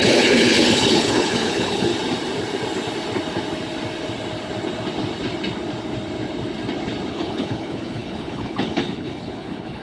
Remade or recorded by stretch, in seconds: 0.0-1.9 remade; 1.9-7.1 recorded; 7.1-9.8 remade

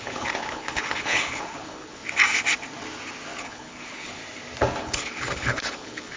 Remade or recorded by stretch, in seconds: 0.0-2.0 remade; 2.0-3.4 recorded; 3.4-4.2 remade; 4.2-4.8 recorded; 4.8-6.2 remade